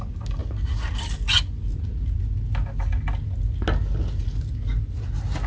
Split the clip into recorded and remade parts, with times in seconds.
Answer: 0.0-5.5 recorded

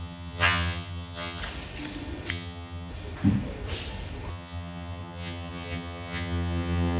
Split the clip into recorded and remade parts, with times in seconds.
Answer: 0.0-1.4 remade; 1.4-2.3 recorded; 2.3-2.9 remade; 2.9-4.3 recorded; 4.3-7.0 remade